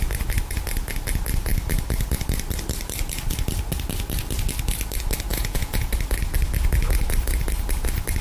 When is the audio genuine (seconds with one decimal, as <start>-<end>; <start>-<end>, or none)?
0.0-5.3; 5.9-8.2